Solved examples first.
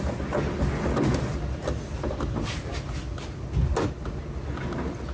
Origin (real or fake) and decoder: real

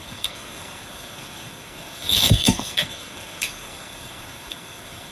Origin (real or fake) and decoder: fake, codec, SNAC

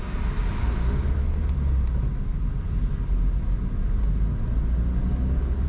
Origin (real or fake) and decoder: real